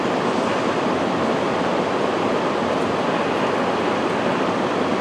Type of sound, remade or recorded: recorded